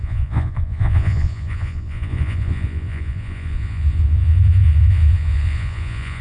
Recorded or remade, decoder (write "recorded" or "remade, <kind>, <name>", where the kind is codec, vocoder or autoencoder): remade, vocoder, Vocos